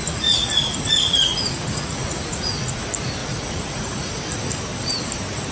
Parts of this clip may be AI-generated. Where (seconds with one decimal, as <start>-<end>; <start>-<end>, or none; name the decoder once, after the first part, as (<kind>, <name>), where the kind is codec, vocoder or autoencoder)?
0.0-2.8 (vocoder, Vocos); 3.2-4.1